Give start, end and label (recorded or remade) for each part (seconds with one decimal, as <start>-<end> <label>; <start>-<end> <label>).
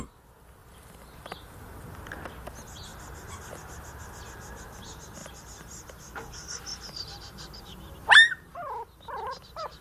0.0-0.6 recorded; 0.6-1.9 remade; 1.9-2.9 recorded; 2.9-3.4 remade; 3.4-5.2 recorded; 5.2-5.9 remade; 5.9-6.7 recorded; 6.7-7.6 remade; 7.6-9.8 recorded